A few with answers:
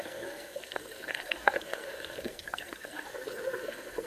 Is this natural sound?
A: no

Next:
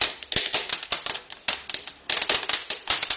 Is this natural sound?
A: yes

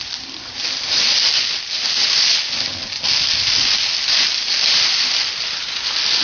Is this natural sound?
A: yes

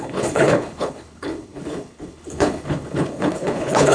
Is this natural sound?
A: no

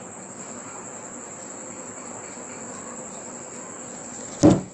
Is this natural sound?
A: yes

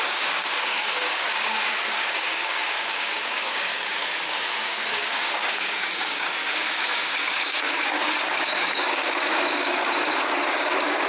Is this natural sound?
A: no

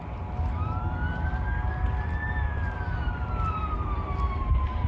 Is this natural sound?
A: no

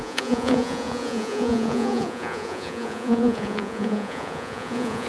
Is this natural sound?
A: no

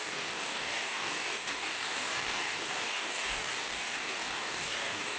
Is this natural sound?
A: no